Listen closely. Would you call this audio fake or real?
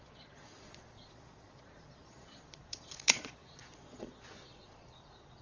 fake